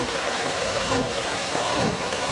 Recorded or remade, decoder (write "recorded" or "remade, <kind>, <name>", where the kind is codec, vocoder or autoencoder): remade, codec, SNAC